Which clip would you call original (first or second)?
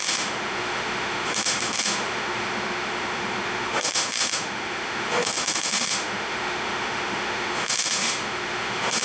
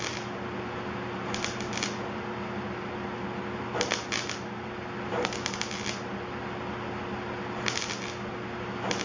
second